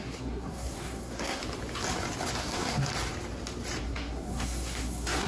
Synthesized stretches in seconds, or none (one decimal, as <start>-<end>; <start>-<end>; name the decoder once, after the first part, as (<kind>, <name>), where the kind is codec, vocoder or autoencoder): 0.0-1.4 (codec, SNAC); 2.4-2.9; 3.8-5.3